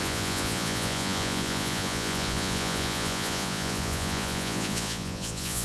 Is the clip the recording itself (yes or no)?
no